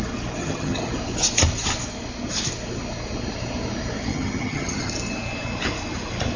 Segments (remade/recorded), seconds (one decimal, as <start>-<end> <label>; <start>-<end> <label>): 0.0-0.4 recorded; 0.4-0.9 remade; 0.9-4.1 recorded; 4.1-4.9 remade; 4.9-6.4 recorded